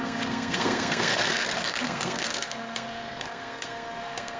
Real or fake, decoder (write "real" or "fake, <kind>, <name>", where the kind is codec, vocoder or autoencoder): fake, codec, SNAC